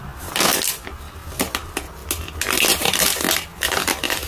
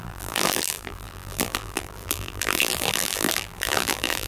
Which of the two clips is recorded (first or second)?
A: first